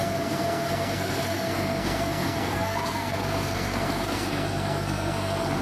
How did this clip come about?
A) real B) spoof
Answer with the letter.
B